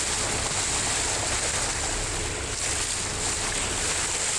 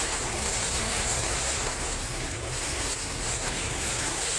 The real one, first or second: first